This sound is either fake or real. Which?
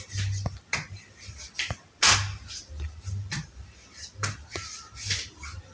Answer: real